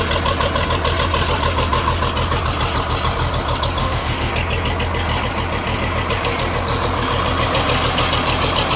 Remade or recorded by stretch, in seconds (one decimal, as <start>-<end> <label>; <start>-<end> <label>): 0.0-3.8 recorded; 3.8-4.3 remade; 4.3-8.8 recorded